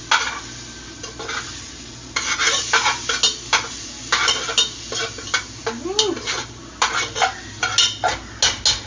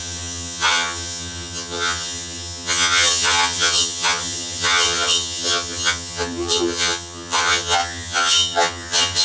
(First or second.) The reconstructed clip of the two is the second